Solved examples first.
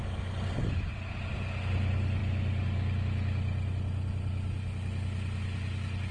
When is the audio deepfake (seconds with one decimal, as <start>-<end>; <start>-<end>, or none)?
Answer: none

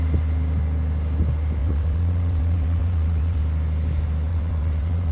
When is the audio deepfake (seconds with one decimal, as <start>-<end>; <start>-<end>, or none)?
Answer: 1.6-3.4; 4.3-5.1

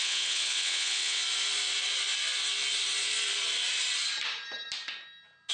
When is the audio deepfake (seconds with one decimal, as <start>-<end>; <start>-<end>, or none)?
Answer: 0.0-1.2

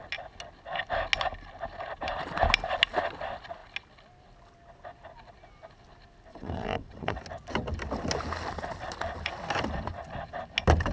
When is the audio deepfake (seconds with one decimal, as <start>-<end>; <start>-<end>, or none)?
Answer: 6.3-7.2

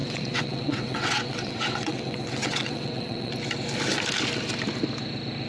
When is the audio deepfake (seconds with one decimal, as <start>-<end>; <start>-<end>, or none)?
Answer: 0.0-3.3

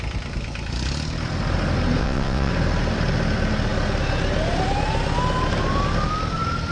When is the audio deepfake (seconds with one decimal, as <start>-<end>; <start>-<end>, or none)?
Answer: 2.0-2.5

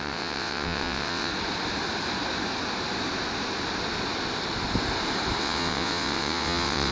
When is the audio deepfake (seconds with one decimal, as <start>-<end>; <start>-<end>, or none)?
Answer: 0.0-1.3; 5.4-6.9